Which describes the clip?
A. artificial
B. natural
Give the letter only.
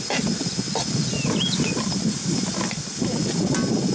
B